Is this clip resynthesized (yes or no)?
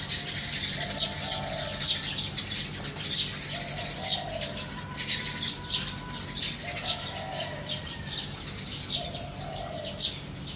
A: no